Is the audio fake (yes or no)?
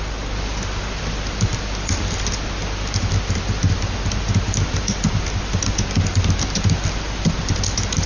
no